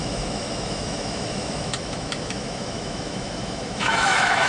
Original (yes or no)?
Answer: no